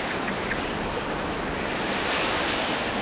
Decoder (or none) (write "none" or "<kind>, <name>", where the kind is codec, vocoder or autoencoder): none